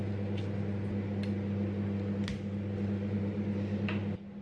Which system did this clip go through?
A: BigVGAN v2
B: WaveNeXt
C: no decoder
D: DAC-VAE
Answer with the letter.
C